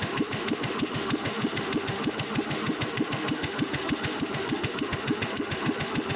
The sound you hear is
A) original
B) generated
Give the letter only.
B